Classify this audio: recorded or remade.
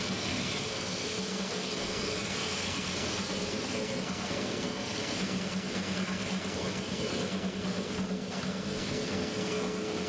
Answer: remade